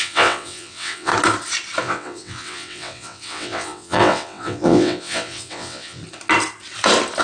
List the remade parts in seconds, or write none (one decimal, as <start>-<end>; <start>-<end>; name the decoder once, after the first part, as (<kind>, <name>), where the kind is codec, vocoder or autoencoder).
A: 0.0-1.1 (vocoder, WaveNeXt); 1.8-6.0